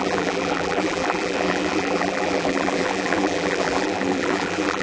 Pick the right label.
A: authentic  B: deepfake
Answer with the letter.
B